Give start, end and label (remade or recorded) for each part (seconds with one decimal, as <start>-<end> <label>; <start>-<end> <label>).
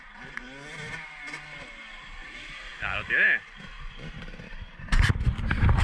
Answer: 0.0-0.4 remade; 0.4-2.2 recorded; 2.2-5.8 remade